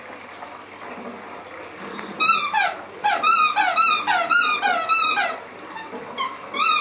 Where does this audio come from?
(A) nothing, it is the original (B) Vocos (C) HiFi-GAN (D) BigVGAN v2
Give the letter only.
A